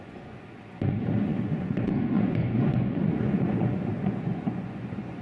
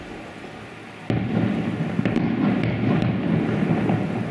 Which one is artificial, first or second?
first